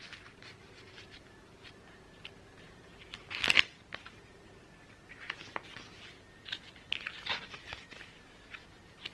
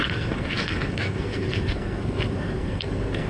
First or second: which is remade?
second